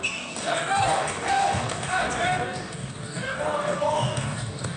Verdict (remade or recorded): remade